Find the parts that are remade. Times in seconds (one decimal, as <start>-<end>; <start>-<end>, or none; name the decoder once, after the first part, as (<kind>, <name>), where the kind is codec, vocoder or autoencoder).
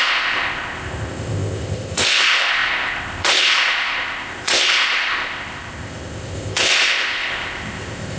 0.0-8.2 (codec, ZipCodec)